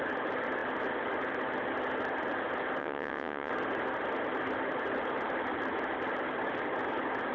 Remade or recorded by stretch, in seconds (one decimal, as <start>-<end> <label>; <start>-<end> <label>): 0.0-2.8 recorded; 2.8-3.5 remade; 3.5-7.3 recorded